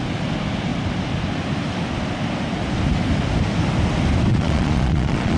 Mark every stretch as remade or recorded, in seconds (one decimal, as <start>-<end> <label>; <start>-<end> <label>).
0.0-4.3 recorded; 4.3-5.4 remade